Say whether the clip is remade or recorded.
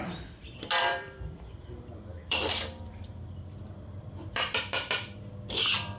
remade